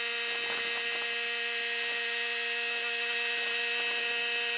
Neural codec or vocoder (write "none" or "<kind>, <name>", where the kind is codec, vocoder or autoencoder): none